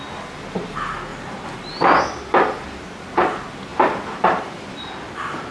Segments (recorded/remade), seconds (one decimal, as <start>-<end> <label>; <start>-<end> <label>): 0.0-1.1 recorded; 1.1-1.8 remade; 1.8-3.7 recorded; 3.7-5.5 remade